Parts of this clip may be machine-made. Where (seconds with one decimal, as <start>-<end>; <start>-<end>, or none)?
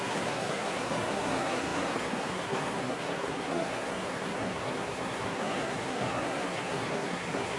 0.0-7.6